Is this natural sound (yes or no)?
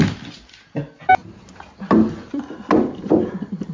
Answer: yes